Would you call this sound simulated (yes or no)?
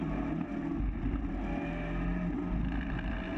no